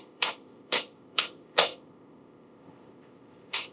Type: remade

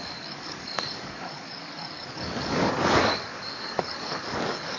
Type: remade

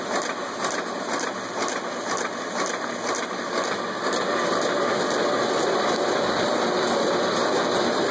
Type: recorded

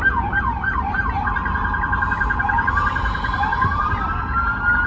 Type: recorded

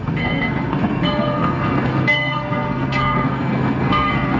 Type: remade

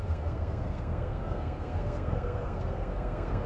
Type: remade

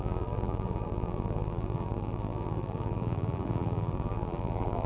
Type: remade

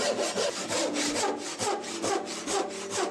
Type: recorded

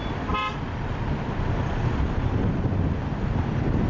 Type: recorded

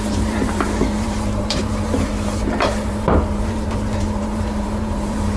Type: remade